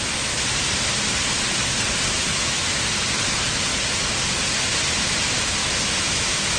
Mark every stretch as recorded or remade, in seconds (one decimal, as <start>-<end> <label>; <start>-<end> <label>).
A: 0.0-2.3 recorded; 2.3-2.9 remade; 2.9-5.6 recorded; 5.6-6.6 remade